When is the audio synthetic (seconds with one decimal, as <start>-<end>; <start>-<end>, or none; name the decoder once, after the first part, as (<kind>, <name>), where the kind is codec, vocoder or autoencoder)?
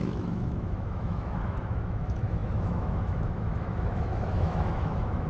0.0-5.3 (autoencoder, DAC-VAE)